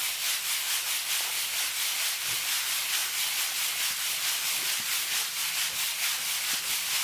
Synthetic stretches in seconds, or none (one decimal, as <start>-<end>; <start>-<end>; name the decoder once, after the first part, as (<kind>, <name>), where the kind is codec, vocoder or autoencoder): none